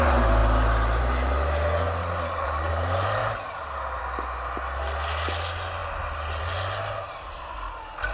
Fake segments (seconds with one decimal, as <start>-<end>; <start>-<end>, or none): 2.0-2.7